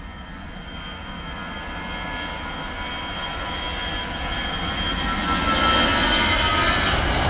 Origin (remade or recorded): recorded